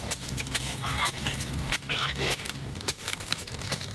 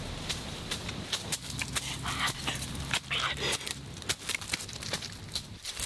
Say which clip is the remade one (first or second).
first